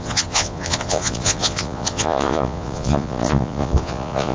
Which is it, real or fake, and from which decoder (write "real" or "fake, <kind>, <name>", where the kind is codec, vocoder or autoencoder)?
fake, vocoder, Vocos